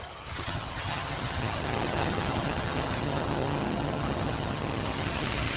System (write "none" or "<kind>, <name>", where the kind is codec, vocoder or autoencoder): vocoder, HiFi-GAN